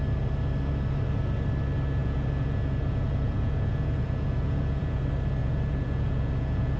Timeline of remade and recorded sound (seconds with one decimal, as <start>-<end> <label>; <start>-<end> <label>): 0.0-2.0 recorded; 2.0-5.0 remade; 5.0-5.4 recorded; 5.4-6.8 remade